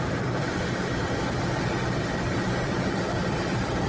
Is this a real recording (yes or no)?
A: yes